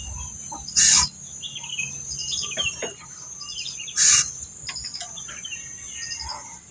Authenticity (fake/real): real